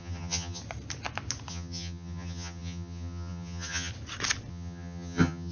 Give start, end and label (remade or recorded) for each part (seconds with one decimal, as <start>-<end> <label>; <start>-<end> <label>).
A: 0.0-0.6 remade; 0.6-1.5 recorded; 1.5-3.9 remade; 3.9-4.5 recorded; 4.5-5.5 remade